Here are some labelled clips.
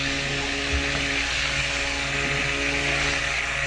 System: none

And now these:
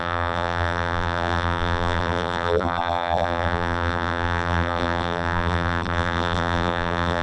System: vocoder, BigVGAN v2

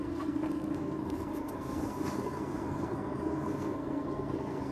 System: codec, SNAC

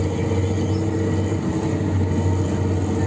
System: none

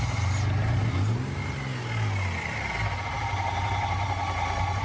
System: none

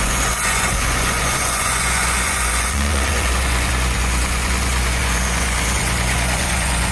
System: vocoder, Vocos